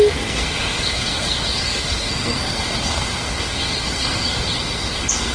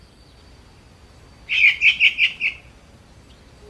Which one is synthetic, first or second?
first